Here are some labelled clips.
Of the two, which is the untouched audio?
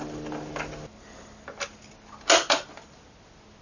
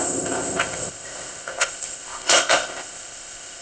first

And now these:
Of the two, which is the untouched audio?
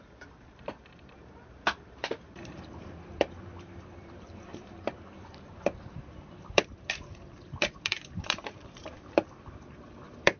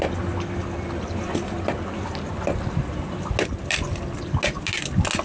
second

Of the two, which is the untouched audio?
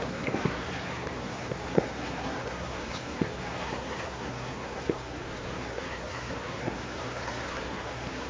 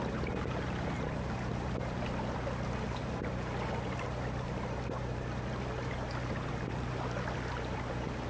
second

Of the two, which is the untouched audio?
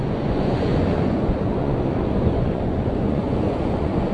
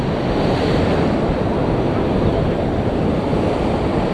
second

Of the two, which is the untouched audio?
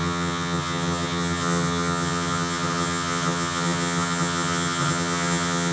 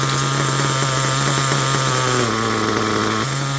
second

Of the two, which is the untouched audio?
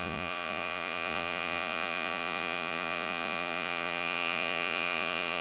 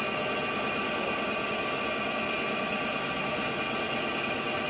second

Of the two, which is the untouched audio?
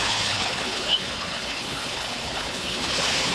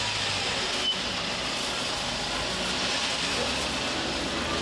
second